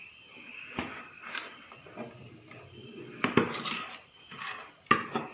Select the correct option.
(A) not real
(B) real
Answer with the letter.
B